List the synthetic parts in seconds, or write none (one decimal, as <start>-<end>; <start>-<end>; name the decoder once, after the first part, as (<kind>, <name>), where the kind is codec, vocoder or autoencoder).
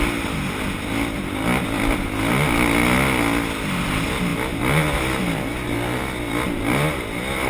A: none